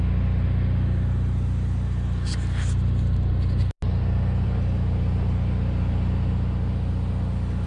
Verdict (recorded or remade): recorded